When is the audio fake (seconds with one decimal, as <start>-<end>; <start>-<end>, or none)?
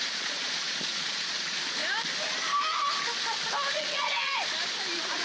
0.0-1.8; 3.7-4.3